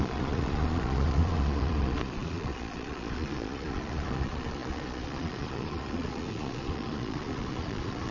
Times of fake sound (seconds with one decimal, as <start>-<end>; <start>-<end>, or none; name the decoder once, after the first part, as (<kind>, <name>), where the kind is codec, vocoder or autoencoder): 0.0-8.1 (vocoder, Vocos)

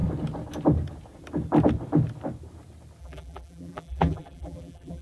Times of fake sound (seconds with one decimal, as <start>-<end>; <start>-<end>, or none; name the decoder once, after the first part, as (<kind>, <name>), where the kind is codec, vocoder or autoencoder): 3.0-5.0 (vocoder, BigVGAN v2)

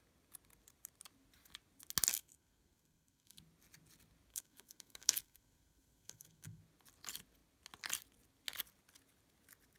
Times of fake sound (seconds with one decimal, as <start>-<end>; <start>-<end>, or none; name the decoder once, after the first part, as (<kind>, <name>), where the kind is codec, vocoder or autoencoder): 2.1-3.4 (codec, SNAC); 4.3-6.6

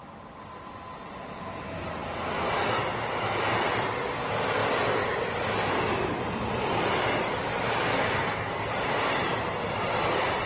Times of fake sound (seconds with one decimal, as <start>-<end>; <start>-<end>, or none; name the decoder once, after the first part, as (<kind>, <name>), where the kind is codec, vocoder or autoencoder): 7.9-8.7 (codec, SNAC)

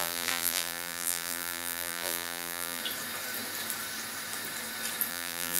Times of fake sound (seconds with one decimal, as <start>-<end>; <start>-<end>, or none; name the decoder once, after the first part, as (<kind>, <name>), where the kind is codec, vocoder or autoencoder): 0.0-2.8 (vocoder, BigVGAN v2); 5.1-5.6